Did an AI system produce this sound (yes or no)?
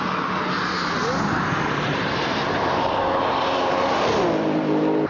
yes